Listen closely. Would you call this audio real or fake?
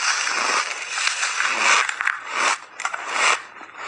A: real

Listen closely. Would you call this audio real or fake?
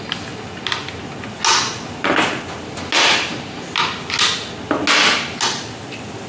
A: real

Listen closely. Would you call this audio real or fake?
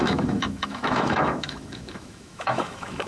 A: fake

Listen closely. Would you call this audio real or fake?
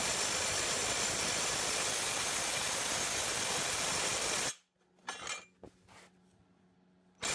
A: real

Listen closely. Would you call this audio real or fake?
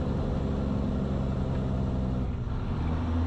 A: real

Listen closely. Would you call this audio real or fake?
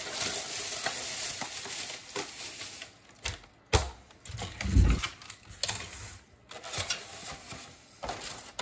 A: real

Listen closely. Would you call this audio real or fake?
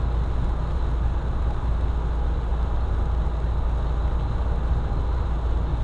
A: real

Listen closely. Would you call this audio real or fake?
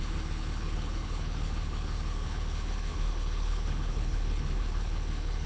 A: fake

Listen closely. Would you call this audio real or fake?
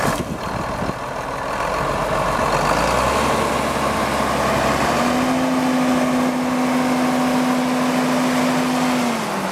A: real